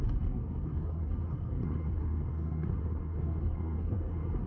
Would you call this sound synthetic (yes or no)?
yes